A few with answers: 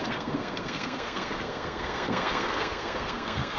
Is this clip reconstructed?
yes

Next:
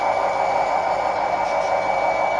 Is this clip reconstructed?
no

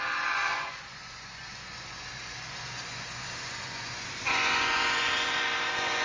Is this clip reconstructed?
yes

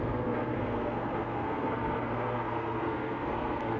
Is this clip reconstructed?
yes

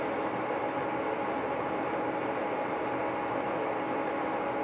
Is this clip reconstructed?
no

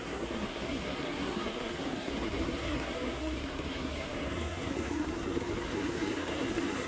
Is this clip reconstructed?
yes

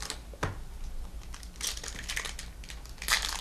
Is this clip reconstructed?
no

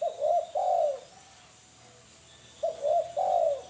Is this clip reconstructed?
no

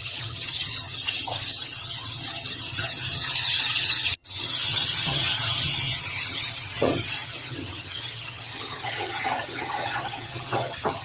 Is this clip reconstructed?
yes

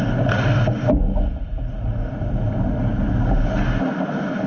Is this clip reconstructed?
no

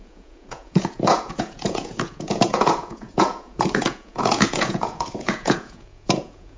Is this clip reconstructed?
yes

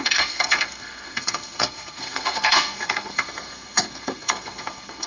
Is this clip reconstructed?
yes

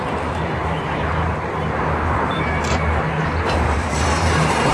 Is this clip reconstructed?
yes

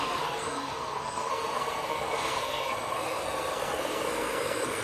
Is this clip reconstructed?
yes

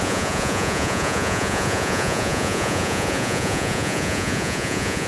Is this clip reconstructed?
yes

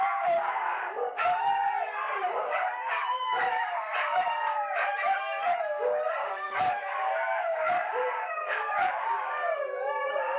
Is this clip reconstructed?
yes